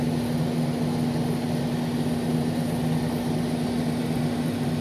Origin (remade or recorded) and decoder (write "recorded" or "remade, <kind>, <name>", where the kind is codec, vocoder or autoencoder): recorded